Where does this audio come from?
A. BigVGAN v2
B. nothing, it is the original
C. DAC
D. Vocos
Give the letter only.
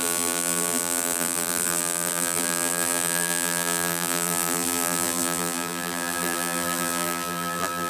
A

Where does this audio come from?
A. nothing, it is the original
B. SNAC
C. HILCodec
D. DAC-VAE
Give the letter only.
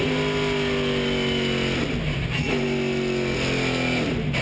A